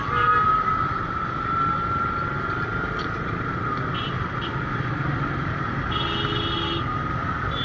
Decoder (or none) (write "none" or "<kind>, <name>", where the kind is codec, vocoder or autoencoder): none